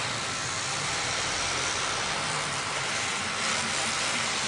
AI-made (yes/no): yes